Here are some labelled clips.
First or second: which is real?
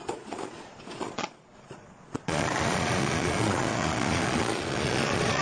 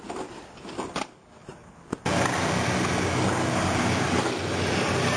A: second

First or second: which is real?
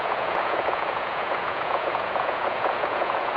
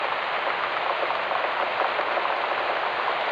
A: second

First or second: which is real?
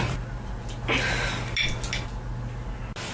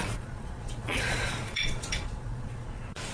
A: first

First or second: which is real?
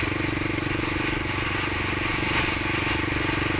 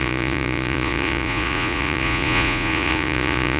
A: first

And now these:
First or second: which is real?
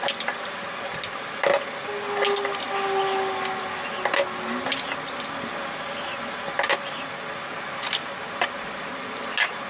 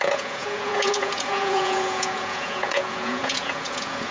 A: first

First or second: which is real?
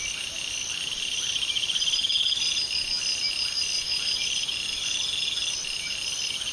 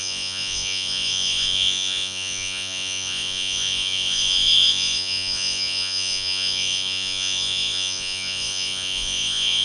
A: first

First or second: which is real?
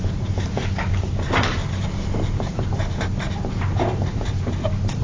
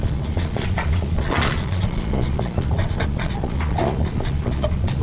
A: first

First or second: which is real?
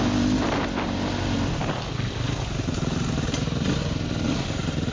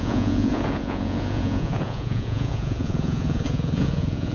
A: first